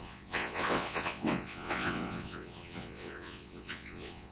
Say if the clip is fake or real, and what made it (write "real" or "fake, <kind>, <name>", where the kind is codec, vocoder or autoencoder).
fake, vocoder, WaveNeXt